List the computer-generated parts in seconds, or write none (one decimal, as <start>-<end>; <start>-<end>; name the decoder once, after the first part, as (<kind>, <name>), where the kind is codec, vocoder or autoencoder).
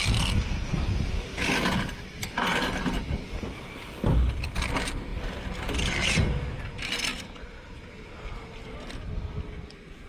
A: 7.1-7.9 (vocoder, BigVGAN v2)